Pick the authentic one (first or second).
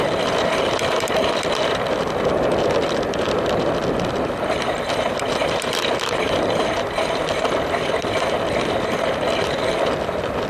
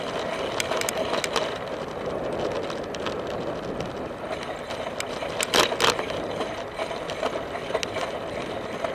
second